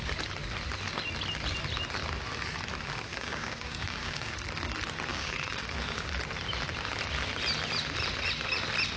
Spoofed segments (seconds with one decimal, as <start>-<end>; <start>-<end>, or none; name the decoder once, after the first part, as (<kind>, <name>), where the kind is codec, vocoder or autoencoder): 3.1-4.3 (codec, DAC); 5.1-6.1